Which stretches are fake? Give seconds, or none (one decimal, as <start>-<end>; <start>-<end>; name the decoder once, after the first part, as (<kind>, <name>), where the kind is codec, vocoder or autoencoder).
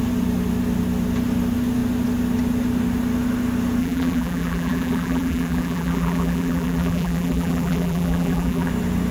3.8-8.7 (vocoder, BigVGAN v2)